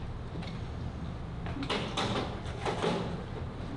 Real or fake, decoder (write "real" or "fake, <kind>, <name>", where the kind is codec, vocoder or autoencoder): real